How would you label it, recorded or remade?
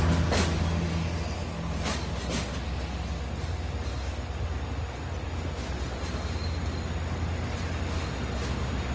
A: recorded